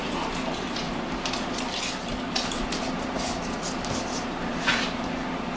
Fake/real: real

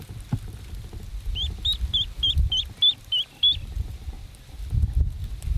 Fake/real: real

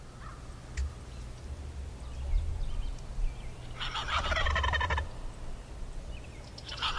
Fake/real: real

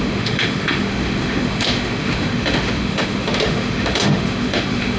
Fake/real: fake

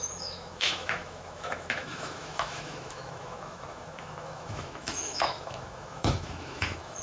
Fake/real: fake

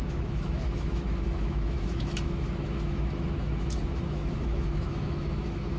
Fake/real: fake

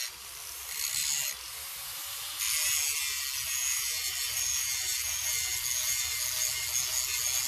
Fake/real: real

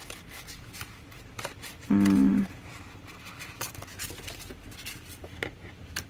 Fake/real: real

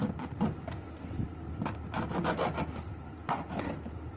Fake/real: real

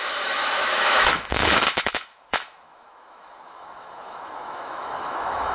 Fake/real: fake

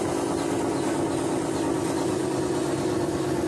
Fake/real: real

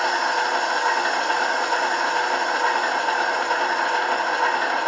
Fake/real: real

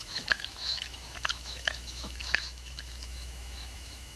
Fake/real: fake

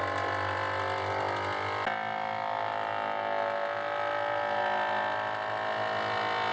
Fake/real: real